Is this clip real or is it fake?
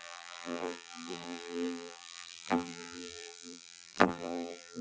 fake